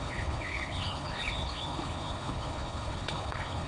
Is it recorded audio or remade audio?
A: remade